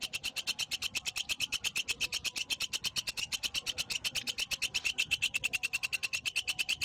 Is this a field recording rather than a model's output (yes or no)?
yes